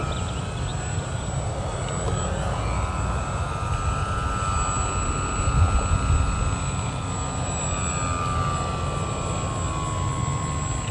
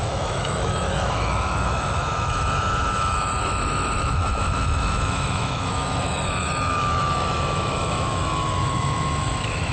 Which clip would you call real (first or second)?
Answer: first